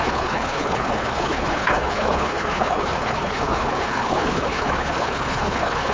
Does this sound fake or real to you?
fake